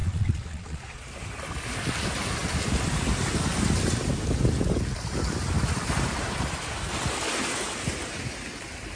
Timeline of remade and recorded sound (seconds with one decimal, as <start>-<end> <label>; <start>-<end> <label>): 0.0-1.0 remade; 1.0-9.0 recorded

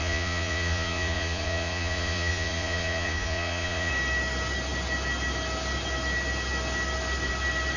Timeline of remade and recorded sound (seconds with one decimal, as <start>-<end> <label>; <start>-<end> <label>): 0.0-3.9 remade; 3.9-7.8 recorded